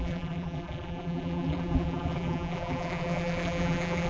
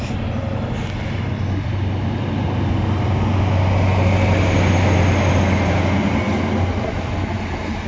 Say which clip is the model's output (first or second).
first